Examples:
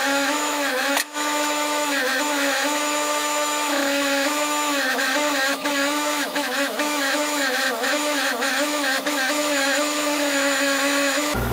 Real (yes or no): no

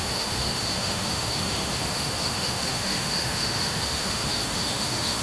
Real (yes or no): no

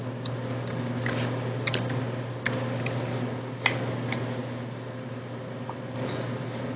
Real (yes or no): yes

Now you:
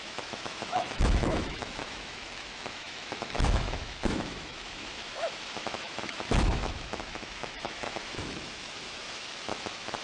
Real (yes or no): no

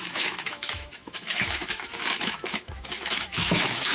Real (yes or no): no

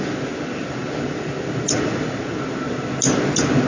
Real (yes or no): yes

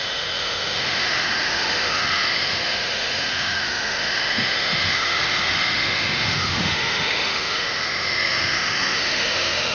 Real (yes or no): no